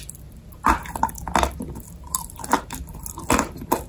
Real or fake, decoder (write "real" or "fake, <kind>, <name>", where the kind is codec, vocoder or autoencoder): real